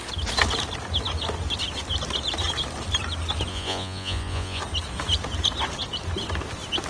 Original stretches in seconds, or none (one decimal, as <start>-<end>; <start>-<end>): 0.0-3.5; 4.6-6.9